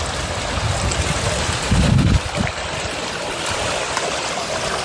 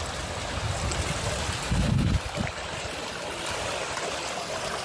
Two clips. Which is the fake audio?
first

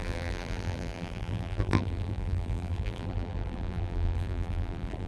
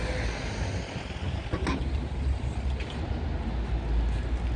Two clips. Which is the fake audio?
first